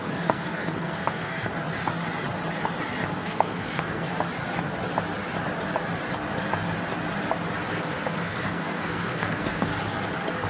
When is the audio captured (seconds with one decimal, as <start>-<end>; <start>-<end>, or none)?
1.5-3.1; 4.1-7.7; 9.7-10.5